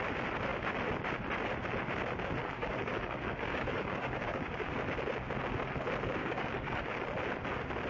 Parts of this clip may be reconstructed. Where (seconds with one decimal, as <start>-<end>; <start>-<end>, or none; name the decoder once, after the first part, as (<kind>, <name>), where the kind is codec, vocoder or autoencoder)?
2.4-4.7 (codec, DAC); 6.2-7.0